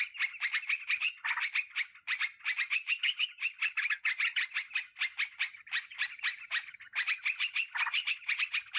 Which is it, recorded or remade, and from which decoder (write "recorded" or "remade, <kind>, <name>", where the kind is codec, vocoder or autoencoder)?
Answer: recorded